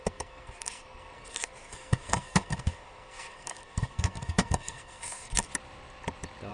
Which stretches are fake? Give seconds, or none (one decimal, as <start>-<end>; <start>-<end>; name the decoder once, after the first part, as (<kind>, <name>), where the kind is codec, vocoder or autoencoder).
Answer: 0.0-5.5 (codec, SNAC)